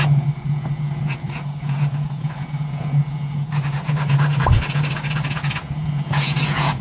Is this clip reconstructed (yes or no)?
yes